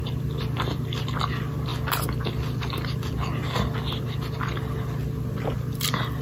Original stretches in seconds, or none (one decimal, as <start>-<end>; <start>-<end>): 0.0-6.2